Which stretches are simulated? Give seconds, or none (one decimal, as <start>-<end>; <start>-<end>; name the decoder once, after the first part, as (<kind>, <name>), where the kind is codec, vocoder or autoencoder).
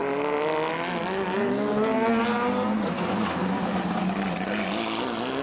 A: none